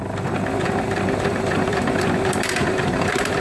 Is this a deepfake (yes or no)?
yes